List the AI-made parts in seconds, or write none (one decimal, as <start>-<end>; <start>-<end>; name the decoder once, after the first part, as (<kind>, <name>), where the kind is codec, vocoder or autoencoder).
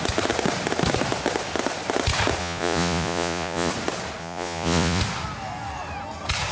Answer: 2.4-3.7 (vocoder, Vocos); 4.2-5.0